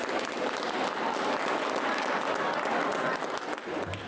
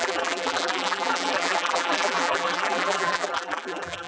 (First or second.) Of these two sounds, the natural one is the first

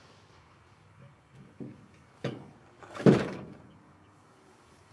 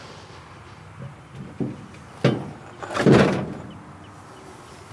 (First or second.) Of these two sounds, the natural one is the second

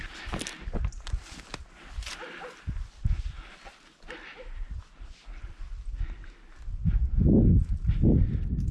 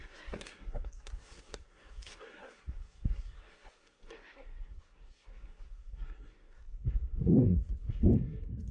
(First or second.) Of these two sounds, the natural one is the first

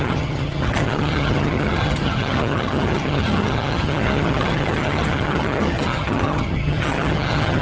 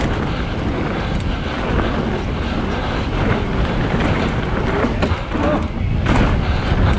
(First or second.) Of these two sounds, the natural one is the second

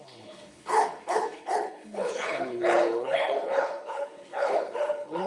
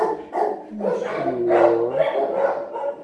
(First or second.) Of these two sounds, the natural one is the second